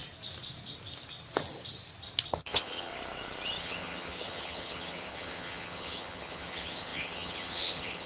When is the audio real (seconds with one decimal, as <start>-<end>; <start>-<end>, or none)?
0.0-2.3; 2.9-3.6